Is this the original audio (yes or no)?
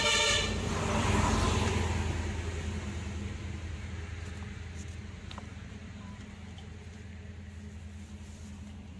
yes